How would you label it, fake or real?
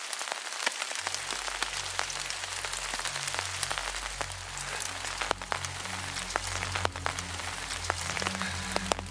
real